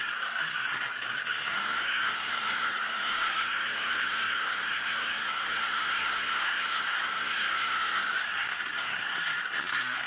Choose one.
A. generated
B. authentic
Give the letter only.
A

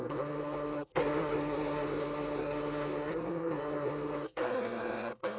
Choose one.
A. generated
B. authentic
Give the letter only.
A